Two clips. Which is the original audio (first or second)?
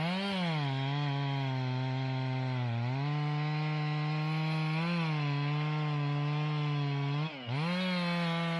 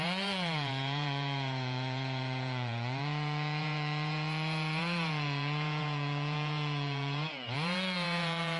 first